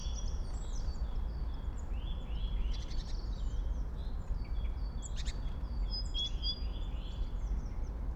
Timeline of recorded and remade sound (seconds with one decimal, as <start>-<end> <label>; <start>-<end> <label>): 0.0-8.2 recorded